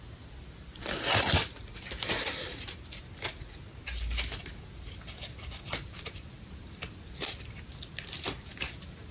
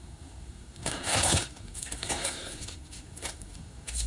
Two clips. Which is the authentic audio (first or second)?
first